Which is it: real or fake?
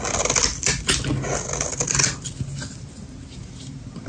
real